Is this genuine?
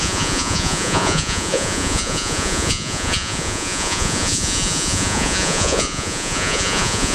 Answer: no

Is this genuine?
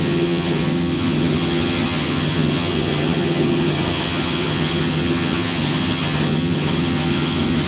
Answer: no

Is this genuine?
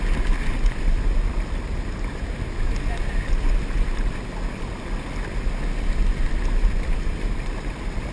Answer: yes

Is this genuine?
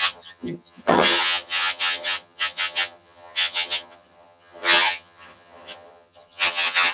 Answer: no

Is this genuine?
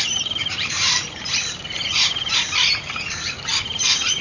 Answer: no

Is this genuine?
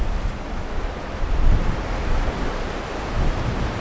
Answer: yes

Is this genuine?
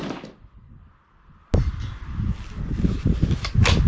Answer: yes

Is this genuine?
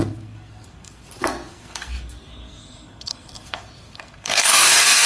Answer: no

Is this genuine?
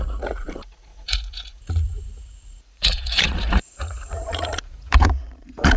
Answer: no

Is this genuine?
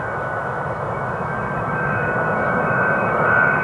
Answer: no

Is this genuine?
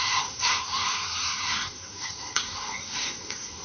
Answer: no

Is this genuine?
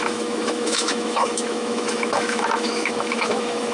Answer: no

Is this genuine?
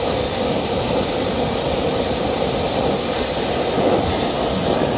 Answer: yes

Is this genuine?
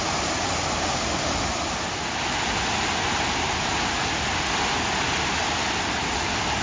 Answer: yes